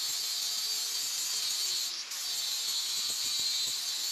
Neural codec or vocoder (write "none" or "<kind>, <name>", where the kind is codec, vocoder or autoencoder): none